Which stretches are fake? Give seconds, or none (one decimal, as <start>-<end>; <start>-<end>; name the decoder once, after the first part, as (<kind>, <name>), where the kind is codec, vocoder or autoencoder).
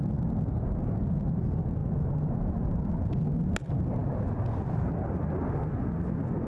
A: 1.8-2.3 (vocoder, BigVGAN v2)